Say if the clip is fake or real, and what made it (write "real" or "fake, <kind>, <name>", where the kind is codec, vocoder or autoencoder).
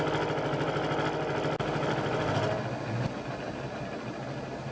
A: real